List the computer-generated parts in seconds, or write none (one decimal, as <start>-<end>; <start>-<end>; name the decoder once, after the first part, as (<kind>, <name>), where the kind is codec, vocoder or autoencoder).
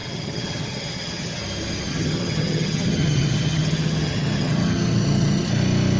0.0-1.4 (vocoder, HiFi-GAN); 1.9-5.5